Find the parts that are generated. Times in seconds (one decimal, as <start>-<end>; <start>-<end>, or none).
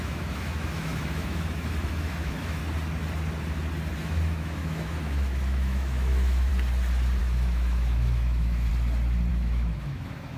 0.0-2.6; 4.0-6.5; 7.2-8.7; 9.3-10.4